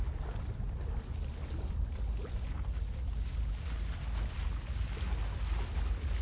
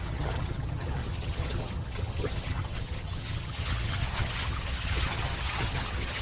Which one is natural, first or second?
first